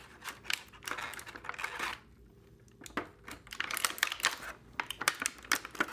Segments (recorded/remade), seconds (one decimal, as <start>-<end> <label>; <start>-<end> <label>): 0.0-5.9 recorded